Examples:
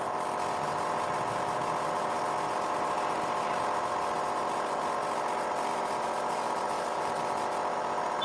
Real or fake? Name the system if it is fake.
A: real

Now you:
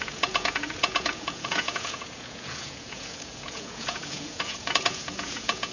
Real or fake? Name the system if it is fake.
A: fake, vocoder, Vocos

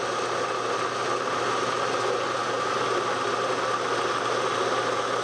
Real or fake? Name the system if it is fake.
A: real